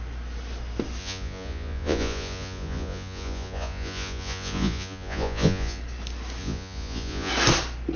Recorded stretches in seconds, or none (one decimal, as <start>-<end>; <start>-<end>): 0.0-1.0; 5.8-6.4; 7.3-8.0